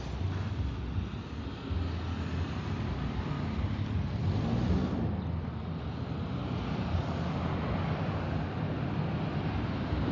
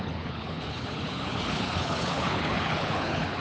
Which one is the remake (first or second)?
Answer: second